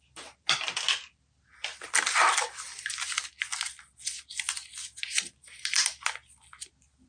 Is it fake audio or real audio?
real